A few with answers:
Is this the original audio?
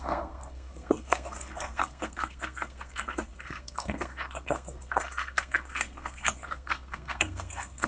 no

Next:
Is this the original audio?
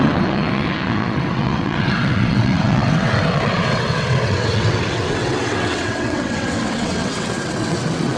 no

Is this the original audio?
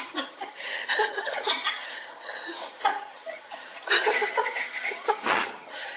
no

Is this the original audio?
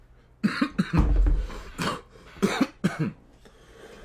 yes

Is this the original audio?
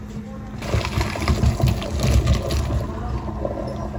yes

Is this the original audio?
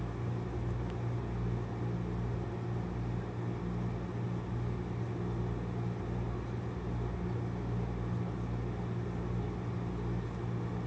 yes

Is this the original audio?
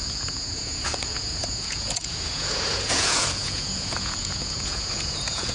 no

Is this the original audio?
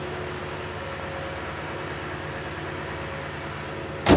yes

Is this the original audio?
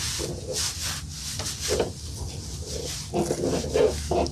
yes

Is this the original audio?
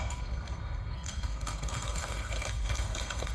no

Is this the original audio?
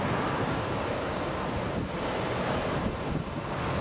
yes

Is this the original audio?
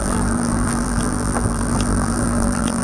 no